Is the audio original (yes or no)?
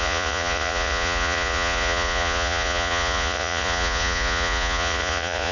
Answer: no